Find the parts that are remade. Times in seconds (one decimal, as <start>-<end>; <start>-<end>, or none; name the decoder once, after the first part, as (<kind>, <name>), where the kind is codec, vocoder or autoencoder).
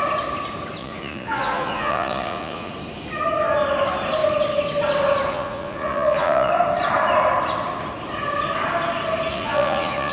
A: 0.8-2.7 (vocoder, Vocos); 5.3-6.5; 9.3-10.1